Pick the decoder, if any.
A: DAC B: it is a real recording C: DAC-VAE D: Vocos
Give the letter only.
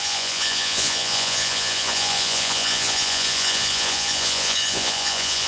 D